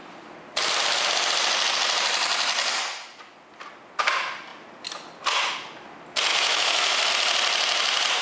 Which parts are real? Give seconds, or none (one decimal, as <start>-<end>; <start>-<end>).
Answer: 0.0-6.3; 7.1-8.2